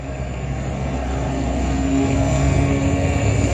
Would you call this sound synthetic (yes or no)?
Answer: yes